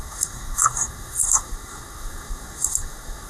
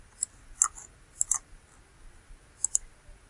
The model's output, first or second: first